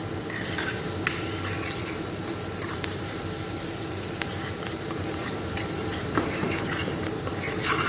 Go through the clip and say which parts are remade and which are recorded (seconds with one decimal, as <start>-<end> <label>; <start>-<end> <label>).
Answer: 0.0-2.2 recorded; 2.2-7.9 remade